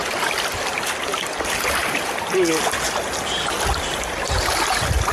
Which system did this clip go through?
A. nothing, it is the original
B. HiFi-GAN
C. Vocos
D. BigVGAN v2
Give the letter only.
A